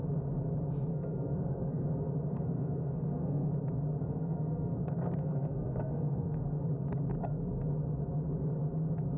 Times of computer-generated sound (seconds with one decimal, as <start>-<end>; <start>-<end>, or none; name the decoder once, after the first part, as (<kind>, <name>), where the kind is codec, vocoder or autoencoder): 0.9-1.9 (codec, SNAC); 2.3-3.5; 4.0-6.6